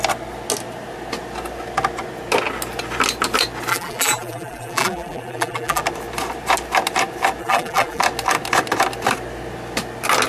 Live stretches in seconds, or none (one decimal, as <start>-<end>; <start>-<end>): 0.0-3.7; 5.8-7.4; 8.0-10.3